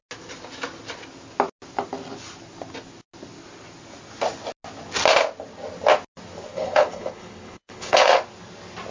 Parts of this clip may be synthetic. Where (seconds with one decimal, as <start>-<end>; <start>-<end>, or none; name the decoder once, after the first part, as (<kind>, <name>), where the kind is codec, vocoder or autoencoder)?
6.5-8.2 (codec, HILCodec)